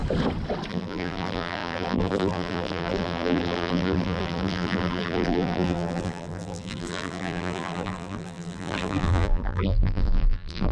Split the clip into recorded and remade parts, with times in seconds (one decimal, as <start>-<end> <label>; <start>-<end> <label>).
0.0-0.7 recorded; 0.7-10.7 remade